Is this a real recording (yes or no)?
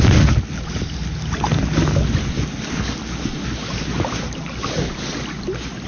yes